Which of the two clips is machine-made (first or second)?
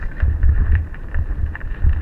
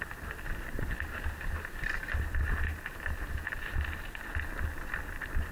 first